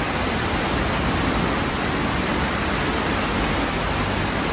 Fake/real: real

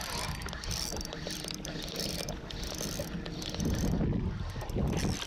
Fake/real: real